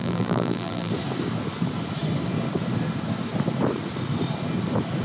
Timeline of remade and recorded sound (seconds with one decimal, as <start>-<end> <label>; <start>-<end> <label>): 0.0-0.9 remade; 0.9-5.0 recorded